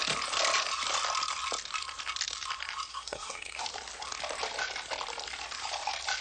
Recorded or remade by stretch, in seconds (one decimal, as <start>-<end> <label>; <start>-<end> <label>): 0.0-2.9 recorded; 2.9-3.6 remade; 3.6-6.2 recorded